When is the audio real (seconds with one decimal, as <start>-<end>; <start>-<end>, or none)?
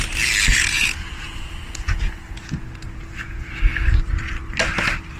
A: 0.0-0.5; 3.5-5.2